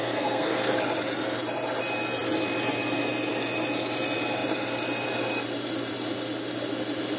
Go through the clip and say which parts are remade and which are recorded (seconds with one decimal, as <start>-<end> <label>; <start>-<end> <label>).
0.0-0.7 remade; 0.7-7.2 recorded